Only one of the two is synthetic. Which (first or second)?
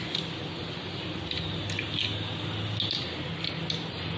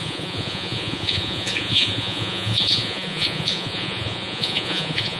second